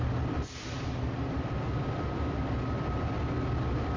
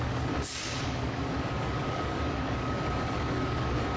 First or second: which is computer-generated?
second